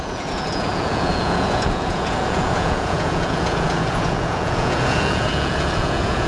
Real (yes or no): no